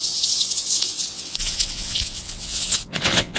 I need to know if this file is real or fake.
fake